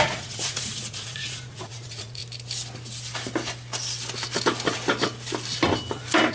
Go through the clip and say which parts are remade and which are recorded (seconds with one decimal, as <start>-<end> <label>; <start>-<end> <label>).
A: 0.0-2.2 remade; 2.2-6.3 recorded